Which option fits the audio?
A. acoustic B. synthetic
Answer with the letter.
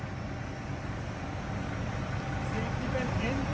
A